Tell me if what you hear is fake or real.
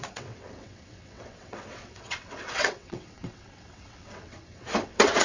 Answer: fake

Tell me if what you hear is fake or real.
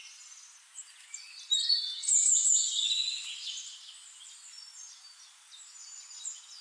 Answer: real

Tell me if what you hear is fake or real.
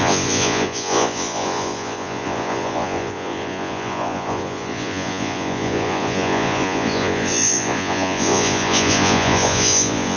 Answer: fake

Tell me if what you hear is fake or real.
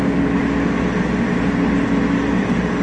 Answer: real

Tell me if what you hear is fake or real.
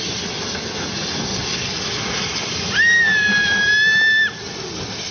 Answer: real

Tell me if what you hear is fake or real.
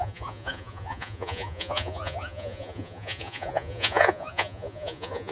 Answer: fake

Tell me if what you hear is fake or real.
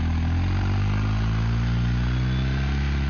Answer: real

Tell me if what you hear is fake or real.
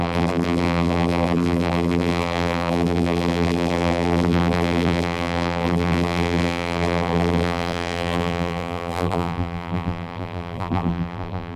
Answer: fake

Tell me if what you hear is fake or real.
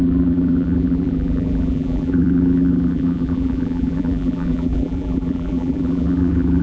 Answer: fake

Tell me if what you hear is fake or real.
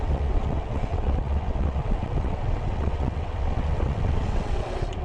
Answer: fake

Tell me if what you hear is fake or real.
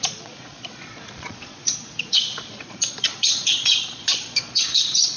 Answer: fake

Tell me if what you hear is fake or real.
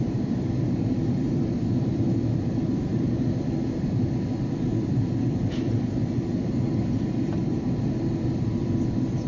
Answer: fake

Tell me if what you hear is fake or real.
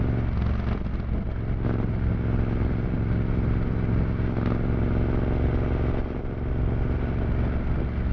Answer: real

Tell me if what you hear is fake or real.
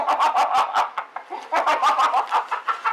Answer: real